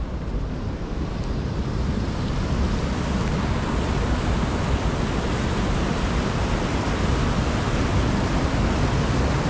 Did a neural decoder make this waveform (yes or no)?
no